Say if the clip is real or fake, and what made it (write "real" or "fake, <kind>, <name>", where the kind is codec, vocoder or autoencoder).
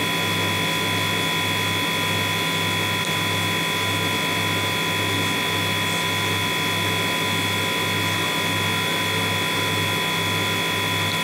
real